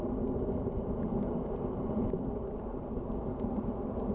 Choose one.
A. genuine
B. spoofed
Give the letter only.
A